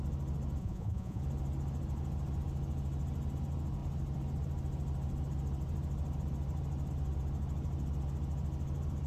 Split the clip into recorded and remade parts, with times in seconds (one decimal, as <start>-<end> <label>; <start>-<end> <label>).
0.0-0.6 recorded; 0.6-1.2 remade; 1.2-9.1 recorded